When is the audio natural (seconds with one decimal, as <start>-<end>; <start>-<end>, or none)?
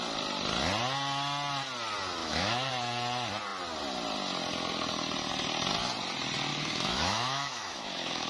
0.0-2.2; 2.7-6.5